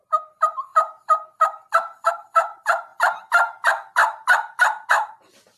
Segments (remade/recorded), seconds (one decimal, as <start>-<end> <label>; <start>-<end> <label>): 0.0-0.7 remade; 0.7-2.1 recorded; 2.1-2.9 remade; 2.9-4.9 recorded; 4.9-5.6 remade